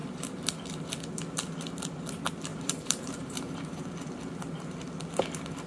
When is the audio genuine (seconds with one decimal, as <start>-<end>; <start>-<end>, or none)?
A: 0.0-2.5; 3.8-5.7